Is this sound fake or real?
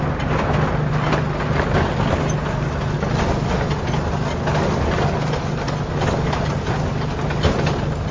real